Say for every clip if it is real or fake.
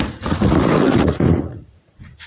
fake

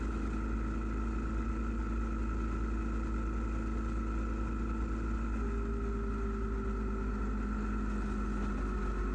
real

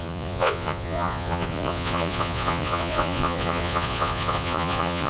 fake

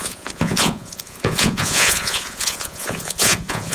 fake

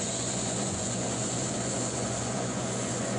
fake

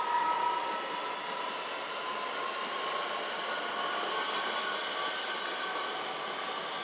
real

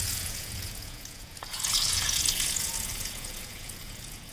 fake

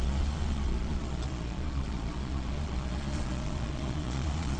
fake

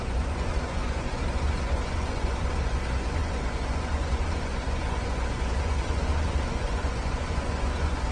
fake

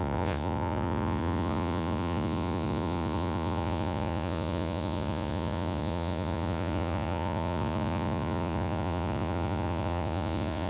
fake